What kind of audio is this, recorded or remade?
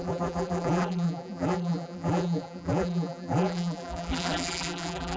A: remade